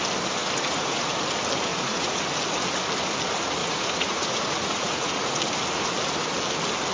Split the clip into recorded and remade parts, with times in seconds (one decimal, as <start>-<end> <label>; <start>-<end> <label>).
0.0-0.4 recorded; 0.4-1.2 remade; 1.2-1.7 recorded; 1.7-2.2 remade; 2.2-3.6 recorded; 3.6-5.4 remade; 5.4-6.9 recorded